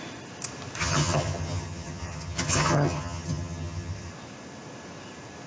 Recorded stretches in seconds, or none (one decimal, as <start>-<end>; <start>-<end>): 0.0-0.8; 4.1-5.5